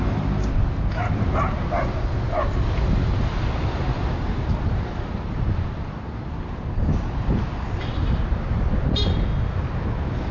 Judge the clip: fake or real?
real